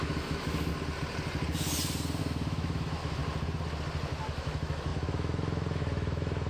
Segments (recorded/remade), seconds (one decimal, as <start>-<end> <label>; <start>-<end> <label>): 0.0-0.7 remade; 0.7-2.2 recorded; 2.2-3.2 remade; 3.2-4.2 recorded; 4.2-6.5 remade